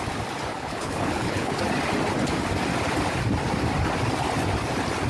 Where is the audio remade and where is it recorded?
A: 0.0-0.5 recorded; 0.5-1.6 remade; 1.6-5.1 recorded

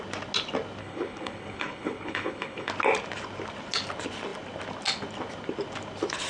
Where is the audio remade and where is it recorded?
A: 0.0-0.8 recorded; 0.8-2.7 remade; 2.7-6.3 recorded

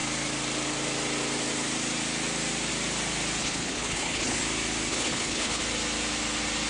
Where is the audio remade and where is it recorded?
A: 0.0-3.4 recorded; 3.4-4.4 remade; 4.4-4.9 recorded; 4.9-5.6 remade; 5.6-6.7 recorded

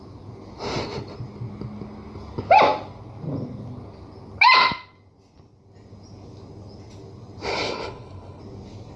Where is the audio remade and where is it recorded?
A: 0.0-7.5 recorded; 7.5-8.4 remade; 8.4-9.0 recorded

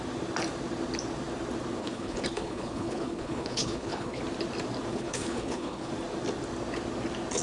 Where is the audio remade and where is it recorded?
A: 0.0-1.8 recorded; 1.8-4.2 remade; 4.2-4.9 recorded; 4.9-5.9 remade; 5.9-7.4 recorded

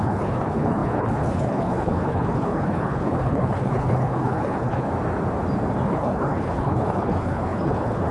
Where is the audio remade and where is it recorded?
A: 0.0-4.9 remade; 4.9-5.9 recorded; 5.9-8.1 remade